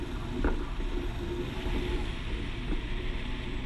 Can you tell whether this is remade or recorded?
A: recorded